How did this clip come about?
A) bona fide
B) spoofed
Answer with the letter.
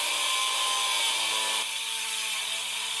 A